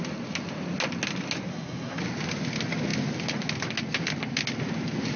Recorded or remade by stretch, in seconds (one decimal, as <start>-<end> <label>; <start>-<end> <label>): 0.0-1.5 recorded; 1.5-2.0 remade; 2.0-5.2 recorded